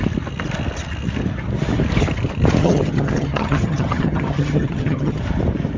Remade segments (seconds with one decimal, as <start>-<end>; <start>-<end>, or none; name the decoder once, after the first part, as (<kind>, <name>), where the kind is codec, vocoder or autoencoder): 2.6-5.2 (vocoder, HiFi-GAN)